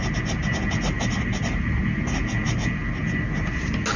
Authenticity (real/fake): real